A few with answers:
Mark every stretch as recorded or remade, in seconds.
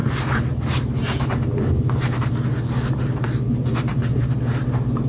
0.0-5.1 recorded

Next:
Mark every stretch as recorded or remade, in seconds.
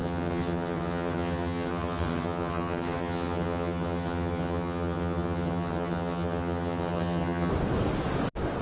0.0-7.5 remade; 7.5-8.6 recorded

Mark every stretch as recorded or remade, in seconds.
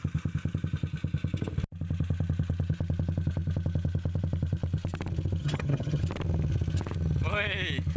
0.0-5.4 recorded; 5.4-6.0 remade; 6.0-8.0 recorded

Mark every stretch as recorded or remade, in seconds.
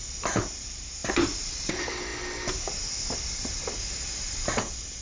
0.0-5.0 recorded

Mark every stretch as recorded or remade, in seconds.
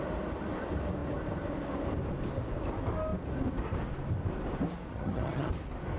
0.0-4.9 recorded; 4.9-5.5 remade; 5.5-6.0 recorded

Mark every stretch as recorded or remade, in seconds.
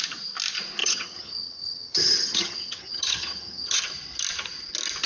0.0-0.8 recorded; 0.8-3.8 remade; 3.8-5.1 recorded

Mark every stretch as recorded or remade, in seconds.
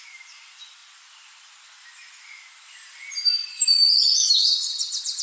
0.0-4.4 recorded; 4.4-5.2 remade